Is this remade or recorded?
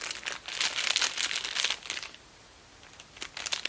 recorded